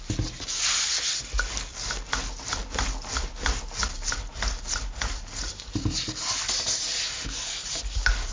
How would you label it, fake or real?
real